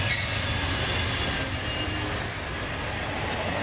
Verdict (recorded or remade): recorded